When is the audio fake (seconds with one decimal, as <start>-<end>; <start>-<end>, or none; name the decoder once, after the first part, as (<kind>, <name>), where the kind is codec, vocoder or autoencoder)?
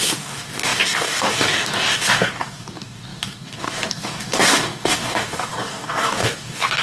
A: 0.0-6.8 (codec, DAC)